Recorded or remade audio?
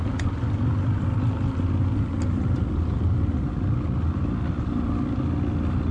recorded